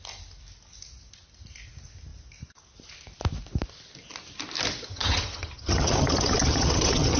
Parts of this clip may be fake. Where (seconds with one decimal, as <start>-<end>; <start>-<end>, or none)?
4.9-7.2